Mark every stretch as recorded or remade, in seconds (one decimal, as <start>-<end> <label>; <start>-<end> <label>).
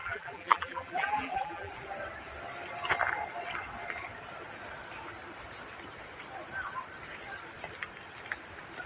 0.0-1.7 remade; 1.7-8.9 recorded